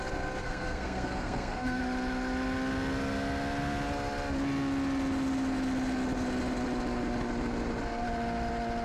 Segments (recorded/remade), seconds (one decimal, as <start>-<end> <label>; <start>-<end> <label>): 0.0-0.4 recorded; 0.4-1.8 remade; 1.8-8.8 recorded